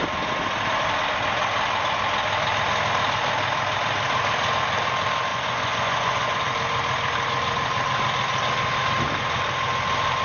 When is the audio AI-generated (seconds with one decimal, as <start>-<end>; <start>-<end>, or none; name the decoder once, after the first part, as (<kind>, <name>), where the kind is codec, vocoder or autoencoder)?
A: 5.3-6.4 (vocoder, Vocos)